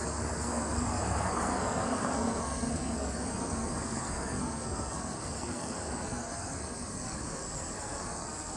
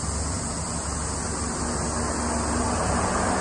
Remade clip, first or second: first